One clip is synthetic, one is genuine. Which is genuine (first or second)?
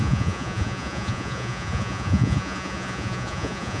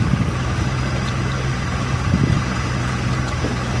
second